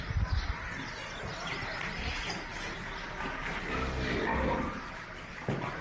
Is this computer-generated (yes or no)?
no